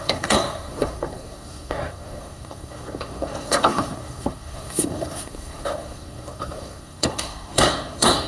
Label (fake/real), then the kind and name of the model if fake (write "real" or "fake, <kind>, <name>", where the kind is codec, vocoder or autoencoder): fake, codec, SNAC